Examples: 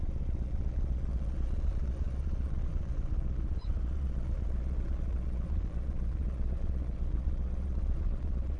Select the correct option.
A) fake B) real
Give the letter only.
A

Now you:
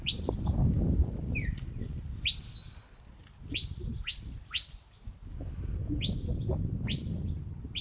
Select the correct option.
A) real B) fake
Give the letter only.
A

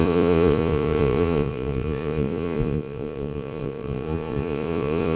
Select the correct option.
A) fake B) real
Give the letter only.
A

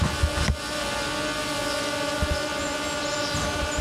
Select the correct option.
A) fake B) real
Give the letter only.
B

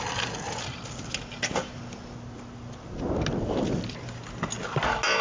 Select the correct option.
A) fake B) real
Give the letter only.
B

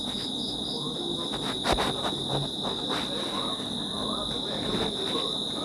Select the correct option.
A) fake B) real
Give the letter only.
B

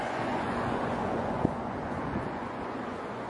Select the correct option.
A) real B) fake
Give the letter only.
B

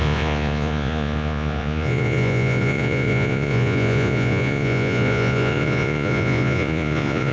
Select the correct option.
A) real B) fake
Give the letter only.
B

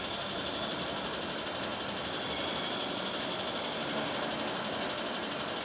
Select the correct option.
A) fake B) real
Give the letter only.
B